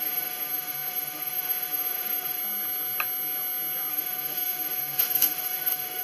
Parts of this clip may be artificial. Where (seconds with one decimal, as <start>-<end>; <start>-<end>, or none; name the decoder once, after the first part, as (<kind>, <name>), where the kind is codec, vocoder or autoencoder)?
0.0-2.4 (autoencoder, DAC-VAE); 3.9-6.0